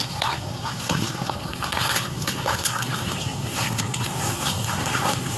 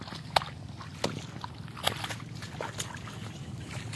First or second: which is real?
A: second